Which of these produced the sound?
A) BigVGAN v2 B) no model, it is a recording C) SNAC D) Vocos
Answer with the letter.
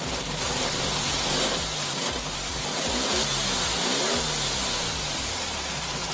B